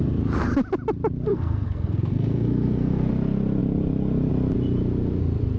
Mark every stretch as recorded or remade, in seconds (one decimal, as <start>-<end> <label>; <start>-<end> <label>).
0.0-1.3 recorded; 1.3-3.1 remade; 3.1-5.6 recorded